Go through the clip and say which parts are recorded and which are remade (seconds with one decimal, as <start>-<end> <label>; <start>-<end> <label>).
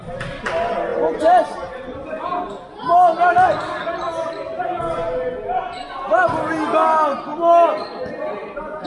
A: 0.0-8.9 recorded